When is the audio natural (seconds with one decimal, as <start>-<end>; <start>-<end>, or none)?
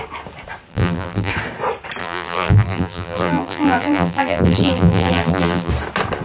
0.0-0.7; 1.3-2.0; 5.7-6.2